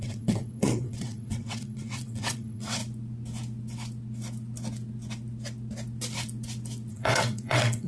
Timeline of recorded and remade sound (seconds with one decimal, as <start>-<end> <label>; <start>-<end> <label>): 0.0-2.8 remade; 2.8-6.9 recorded; 6.9-7.9 remade